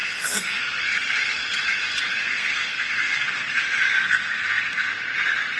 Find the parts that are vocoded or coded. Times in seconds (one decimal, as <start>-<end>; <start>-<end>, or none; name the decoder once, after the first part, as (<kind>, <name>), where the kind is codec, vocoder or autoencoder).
0.0-0.8 (codec, SNAC); 2.2-5.0